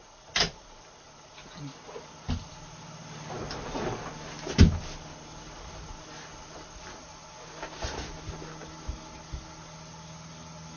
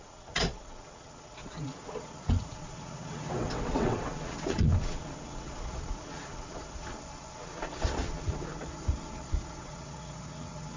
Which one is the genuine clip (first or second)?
first